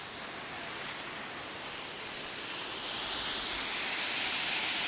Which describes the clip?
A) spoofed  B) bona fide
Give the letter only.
B